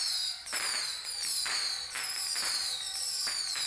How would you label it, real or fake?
real